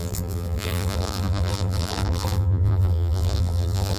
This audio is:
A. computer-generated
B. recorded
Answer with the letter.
A